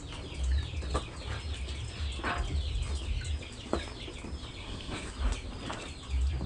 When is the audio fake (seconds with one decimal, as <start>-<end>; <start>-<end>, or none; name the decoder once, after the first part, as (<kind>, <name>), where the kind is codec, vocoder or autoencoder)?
4.6-5.1 (codec, SNAC)